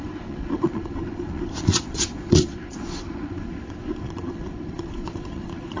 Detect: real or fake fake